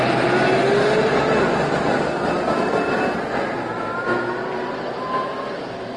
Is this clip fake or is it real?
real